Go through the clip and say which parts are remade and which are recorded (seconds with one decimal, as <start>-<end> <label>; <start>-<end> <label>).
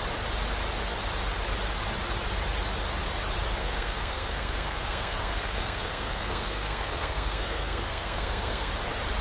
0.0-3.6 recorded; 3.6-8.7 remade; 8.7-9.2 recorded